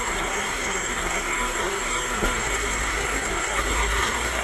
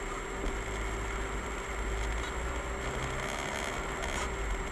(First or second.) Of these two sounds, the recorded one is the second